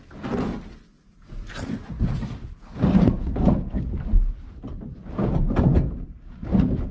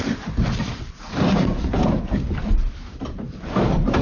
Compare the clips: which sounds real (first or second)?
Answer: first